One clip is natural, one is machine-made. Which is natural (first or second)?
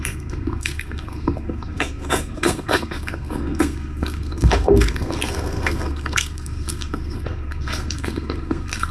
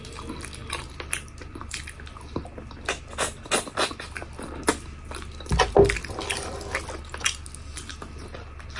second